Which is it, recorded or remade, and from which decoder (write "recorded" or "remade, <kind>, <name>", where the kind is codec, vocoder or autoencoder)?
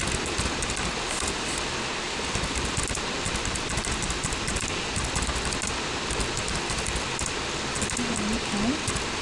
recorded